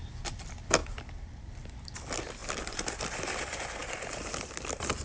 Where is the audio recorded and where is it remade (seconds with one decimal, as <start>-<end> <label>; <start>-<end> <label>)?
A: 0.0-3.8 recorded; 3.8-4.3 remade; 4.3-5.0 recorded